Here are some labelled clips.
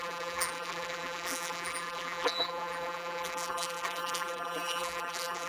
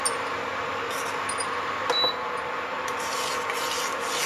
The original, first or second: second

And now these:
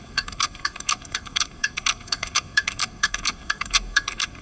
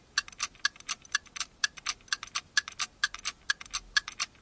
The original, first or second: second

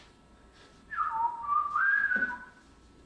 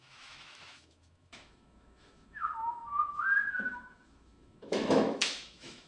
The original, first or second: first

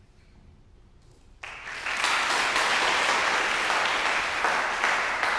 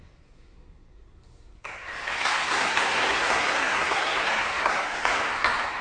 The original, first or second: first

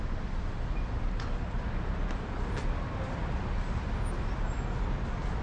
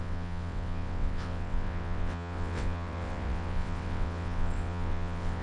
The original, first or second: first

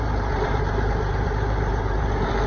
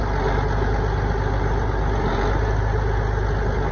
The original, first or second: second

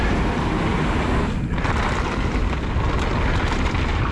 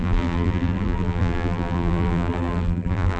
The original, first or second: first